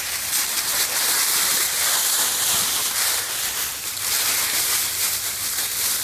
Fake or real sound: real